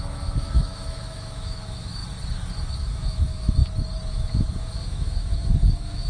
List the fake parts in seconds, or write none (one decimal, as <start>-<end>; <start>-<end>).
0.0-2.0; 2.7-3.6; 4.1-6.1